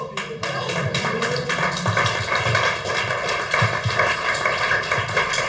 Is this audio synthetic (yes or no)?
no